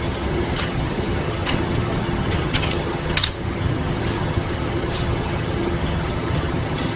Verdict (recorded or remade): remade